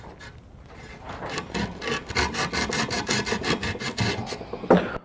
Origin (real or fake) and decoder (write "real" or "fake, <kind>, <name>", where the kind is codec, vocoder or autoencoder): real